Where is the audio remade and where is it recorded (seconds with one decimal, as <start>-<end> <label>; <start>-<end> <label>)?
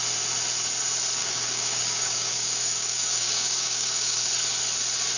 0.0-1.2 recorded; 1.2-4.3 remade; 4.3-5.2 recorded